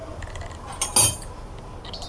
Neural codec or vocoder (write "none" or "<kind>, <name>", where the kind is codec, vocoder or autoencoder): none